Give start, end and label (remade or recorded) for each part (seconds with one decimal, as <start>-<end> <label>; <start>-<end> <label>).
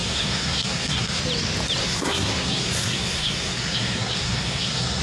0.0-1.2 remade; 1.2-1.8 recorded; 1.8-5.0 remade